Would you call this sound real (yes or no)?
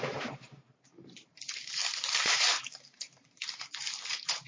no